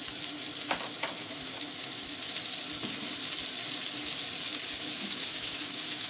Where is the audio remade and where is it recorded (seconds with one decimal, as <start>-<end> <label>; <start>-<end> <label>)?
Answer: 0.0-1.2 recorded; 1.2-1.9 remade; 1.9-5.0 recorded; 5.0-6.1 remade

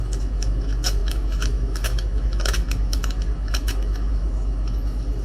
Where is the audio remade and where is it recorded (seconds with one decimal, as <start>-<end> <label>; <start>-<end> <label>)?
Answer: 0.0-5.2 remade

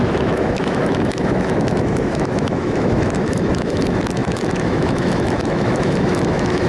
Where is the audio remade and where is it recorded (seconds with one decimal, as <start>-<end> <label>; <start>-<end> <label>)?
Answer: 0.0-6.7 remade

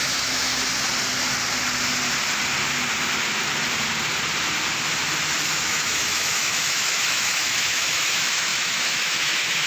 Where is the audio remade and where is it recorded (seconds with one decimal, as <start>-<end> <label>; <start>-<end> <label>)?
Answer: 0.0-0.5 remade; 0.5-5.5 recorded; 5.5-9.7 remade